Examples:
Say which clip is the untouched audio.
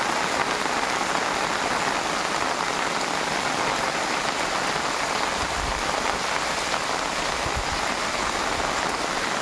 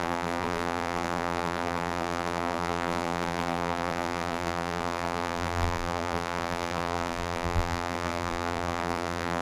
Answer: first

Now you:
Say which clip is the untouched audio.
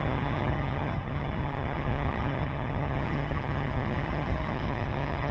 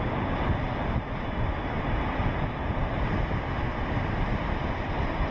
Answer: second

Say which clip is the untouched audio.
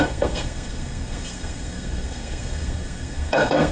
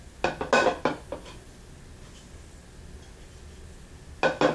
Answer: second